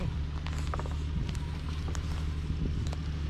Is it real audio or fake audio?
real